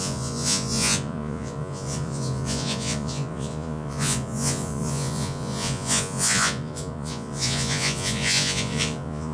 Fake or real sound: fake